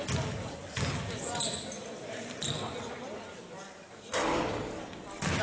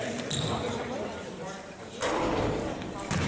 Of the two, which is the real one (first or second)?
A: first